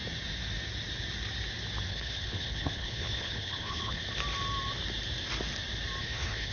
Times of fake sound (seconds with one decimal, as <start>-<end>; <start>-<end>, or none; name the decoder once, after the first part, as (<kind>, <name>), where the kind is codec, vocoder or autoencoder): 1.9-4.0 (codec, HILCodec); 6.0-6.5